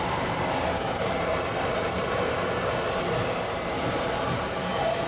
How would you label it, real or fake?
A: fake